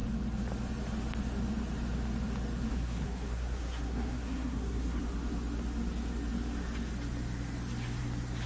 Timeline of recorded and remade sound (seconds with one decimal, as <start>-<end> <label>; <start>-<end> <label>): 0.0-2.7 recorded; 2.7-5.0 remade; 5.0-8.5 recorded